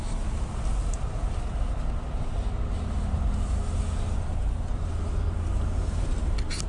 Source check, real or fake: real